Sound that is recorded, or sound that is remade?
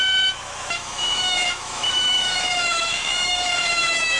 remade